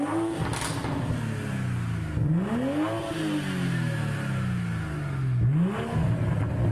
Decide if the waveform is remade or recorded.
recorded